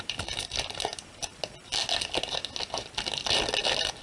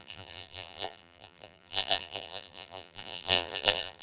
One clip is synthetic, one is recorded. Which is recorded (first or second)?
first